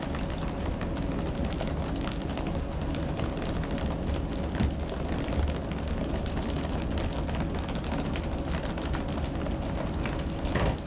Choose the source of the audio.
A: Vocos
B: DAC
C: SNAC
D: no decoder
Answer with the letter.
D